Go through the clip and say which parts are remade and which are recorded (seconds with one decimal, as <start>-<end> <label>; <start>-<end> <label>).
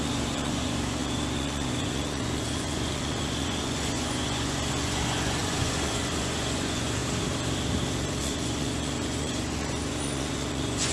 0.0-7.0 remade; 7.0-8.2 recorded; 8.2-10.9 remade